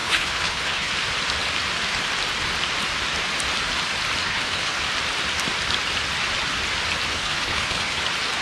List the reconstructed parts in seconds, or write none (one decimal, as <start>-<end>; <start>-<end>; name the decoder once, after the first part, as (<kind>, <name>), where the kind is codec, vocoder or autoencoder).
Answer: 0.0-0.9 (codec, HILCodec); 4.2-4.8; 7.1-8.0